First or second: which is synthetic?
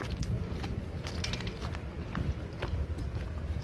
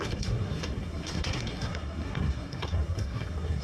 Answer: second